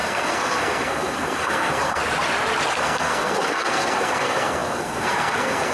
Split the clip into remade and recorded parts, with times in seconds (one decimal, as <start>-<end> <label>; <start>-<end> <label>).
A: 0.0-2.0 remade; 2.0-2.8 recorded; 2.8-5.7 remade